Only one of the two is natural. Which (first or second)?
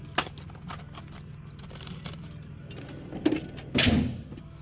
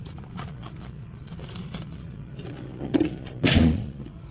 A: first